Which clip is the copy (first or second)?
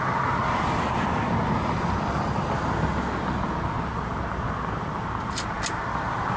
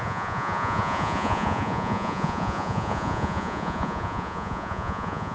second